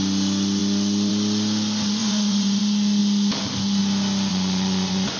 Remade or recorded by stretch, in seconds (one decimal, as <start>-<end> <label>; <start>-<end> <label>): 0.0-2.0 recorded; 2.0-2.6 remade; 2.6-4.3 recorded; 4.3-5.2 remade